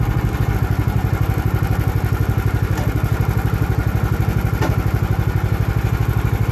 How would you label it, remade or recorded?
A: recorded